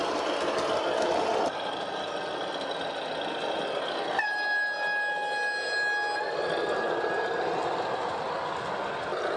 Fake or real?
real